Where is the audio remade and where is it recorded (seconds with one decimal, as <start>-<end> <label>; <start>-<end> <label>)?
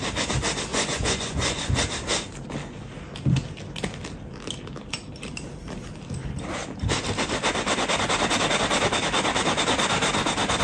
0.0-0.7 recorded; 0.7-1.8 remade; 1.8-10.6 recorded